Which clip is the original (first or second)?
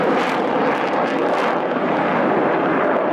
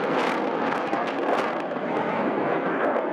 first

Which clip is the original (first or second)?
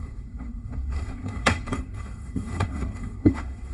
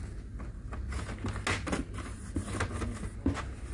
second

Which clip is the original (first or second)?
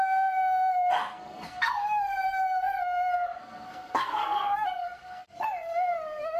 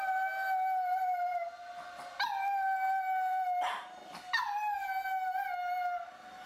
second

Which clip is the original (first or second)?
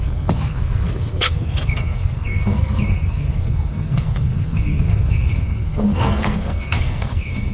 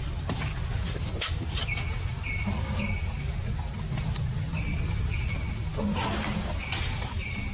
second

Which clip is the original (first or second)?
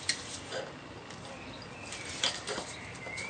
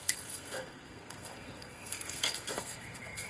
first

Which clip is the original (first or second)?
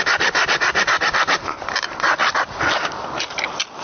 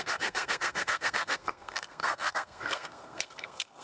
first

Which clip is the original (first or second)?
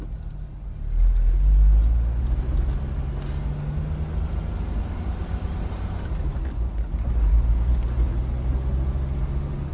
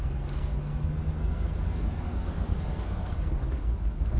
first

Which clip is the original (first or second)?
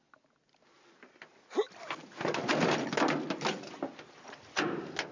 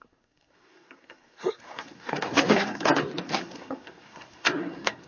first